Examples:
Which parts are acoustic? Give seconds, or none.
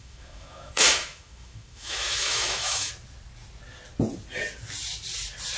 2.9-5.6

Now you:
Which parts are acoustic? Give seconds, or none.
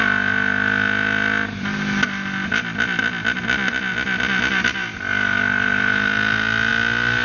0.0-7.2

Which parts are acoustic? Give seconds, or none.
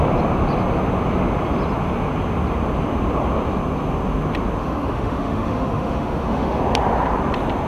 0.0-4.6; 6.6-7.7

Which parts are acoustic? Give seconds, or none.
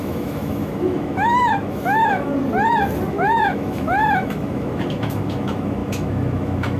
2.3-3.1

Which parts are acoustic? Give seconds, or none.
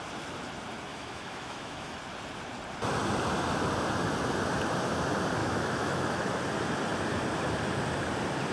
0.0-0.9; 2.0-5.4; 6.4-8.5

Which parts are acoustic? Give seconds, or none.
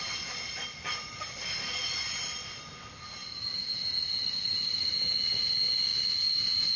0.0-6.8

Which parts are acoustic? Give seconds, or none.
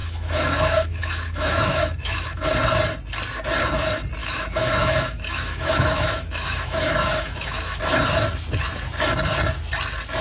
2.4-4.2; 7.8-10.2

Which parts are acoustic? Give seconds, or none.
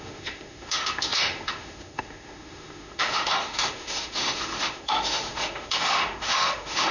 none